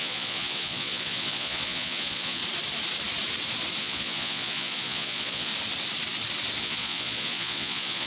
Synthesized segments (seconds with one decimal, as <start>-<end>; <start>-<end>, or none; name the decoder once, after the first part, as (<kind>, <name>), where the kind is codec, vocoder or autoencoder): 0.0-2.4 (vocoder, Vocos); 3.8-5.5; 6.6-8.1